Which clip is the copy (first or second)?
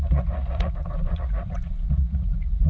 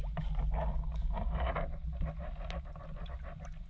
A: first